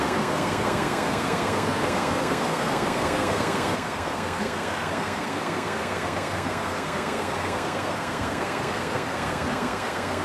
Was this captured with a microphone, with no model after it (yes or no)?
no